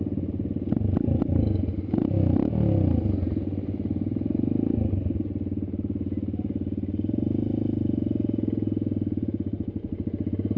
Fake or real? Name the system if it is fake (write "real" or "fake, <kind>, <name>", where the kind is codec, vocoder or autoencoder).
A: real